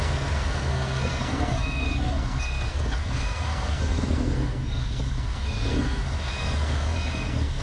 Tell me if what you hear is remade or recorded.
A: remade